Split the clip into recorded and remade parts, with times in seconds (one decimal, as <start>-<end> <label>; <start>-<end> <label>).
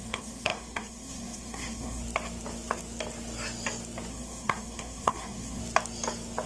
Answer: 0.0-2.0 remade; 2.0-4.1 recorded; 4.1-5.6 remade; 5.6-6.5 recorded